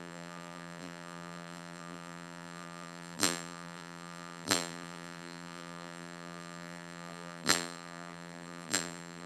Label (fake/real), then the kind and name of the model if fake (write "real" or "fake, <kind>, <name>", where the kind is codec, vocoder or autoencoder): fake, vocoder, BigVGAN v2